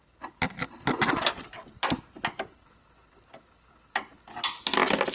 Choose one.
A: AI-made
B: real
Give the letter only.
B